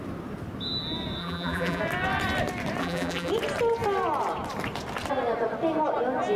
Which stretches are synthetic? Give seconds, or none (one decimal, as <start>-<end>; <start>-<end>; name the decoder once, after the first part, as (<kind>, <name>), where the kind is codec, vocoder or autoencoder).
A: 1.2-1.8 (vocoder, BigVGAN v2); 2.8-3.3